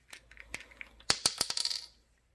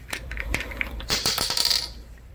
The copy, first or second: second